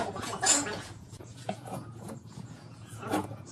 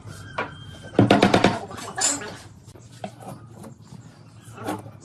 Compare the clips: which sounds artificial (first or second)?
first